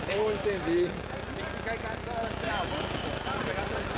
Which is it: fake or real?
real